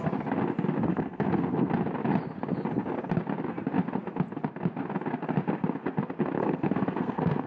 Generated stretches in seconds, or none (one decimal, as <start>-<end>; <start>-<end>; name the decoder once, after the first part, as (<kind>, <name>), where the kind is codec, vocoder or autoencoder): 0.9-1.7 (codec, SNAC); 6.4-7.5